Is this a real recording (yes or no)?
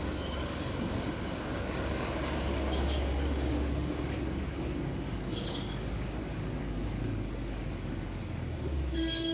no